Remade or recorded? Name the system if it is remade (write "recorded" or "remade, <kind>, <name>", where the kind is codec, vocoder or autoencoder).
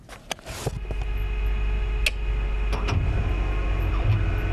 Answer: recorded